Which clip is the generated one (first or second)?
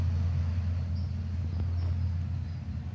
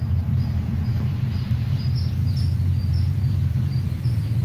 second